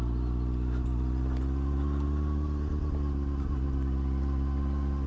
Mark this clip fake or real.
real